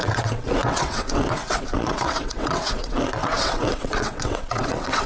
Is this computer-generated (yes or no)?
yes